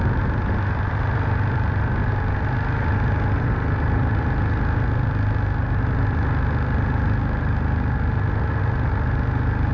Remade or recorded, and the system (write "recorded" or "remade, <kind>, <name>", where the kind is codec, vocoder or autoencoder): recorded